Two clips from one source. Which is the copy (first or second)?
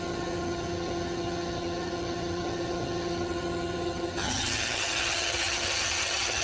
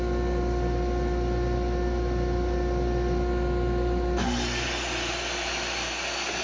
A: first